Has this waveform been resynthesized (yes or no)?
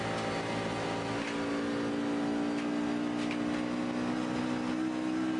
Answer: no